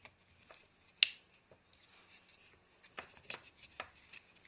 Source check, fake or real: real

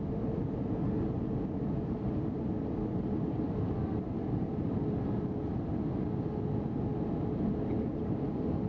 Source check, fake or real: real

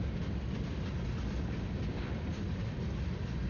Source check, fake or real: real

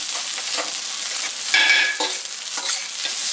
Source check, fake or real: real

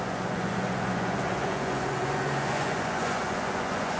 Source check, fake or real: fake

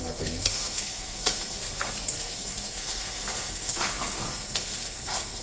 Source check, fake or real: fake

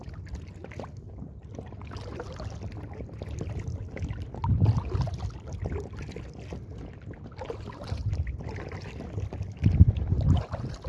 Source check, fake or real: real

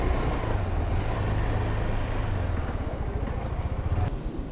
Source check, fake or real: real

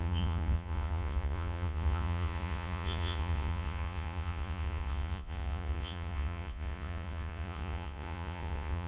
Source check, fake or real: fake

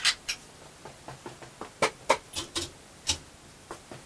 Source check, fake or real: real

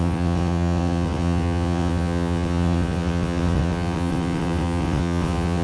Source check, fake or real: fake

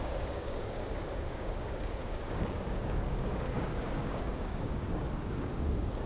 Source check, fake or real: fake